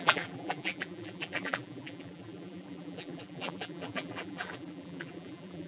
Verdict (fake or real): fake